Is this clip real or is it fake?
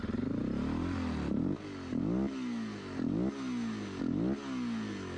real